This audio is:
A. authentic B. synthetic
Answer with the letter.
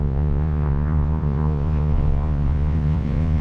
B